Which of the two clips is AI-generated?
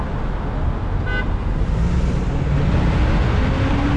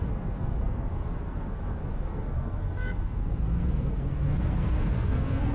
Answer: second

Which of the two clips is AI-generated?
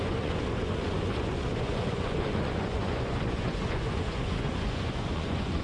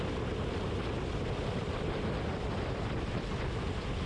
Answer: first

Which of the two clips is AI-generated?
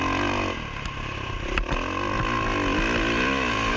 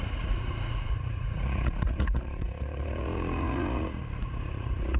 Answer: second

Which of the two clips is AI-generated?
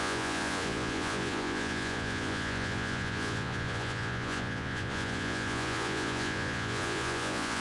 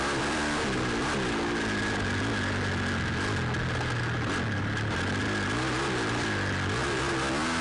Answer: first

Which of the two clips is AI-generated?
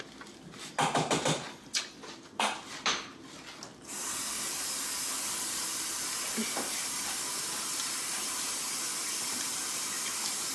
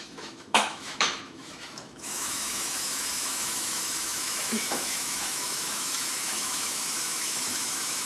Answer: second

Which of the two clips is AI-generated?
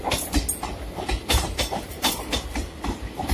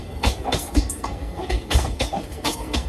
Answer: second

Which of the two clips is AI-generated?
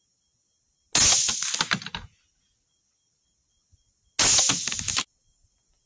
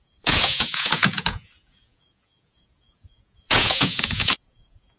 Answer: second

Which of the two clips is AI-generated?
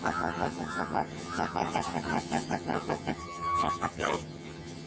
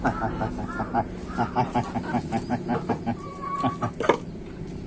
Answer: first